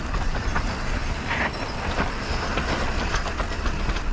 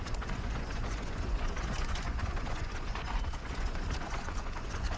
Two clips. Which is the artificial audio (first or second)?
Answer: second